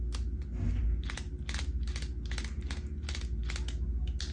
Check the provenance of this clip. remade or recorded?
recorded